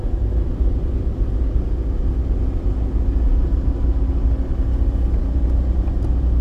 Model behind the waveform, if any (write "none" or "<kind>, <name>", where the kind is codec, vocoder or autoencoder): none